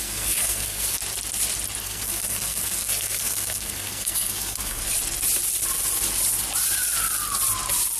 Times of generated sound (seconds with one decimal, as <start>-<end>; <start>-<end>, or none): 0.0-1.0; 1.8-4.8